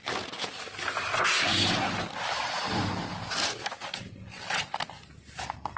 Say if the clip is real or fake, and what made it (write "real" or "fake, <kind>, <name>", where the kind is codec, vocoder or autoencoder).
real